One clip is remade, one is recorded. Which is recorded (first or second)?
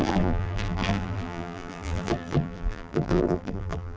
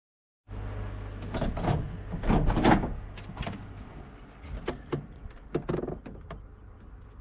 second